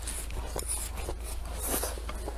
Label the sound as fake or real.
real